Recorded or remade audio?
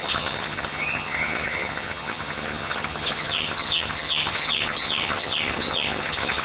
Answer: remade